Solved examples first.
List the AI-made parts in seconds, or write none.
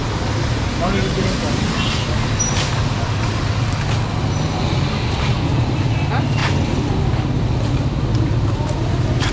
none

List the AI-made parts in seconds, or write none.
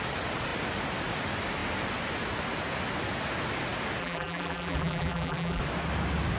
4.0-5.6 (vocoder, BigVGAN v2)